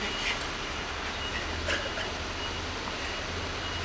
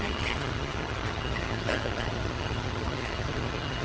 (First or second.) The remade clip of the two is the second